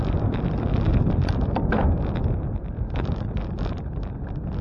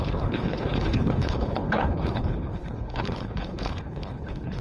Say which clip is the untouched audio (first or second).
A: first